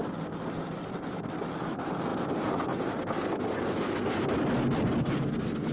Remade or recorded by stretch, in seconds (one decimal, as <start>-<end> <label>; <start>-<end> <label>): 0.0-5.7 recorded